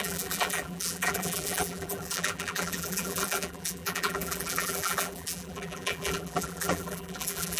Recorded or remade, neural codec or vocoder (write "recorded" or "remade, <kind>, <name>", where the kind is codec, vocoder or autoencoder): remade, vocoder, BigVGAN v2